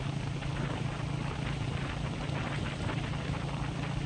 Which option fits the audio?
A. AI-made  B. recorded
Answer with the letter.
B